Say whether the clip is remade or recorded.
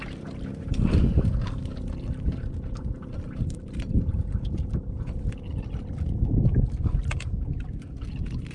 recorded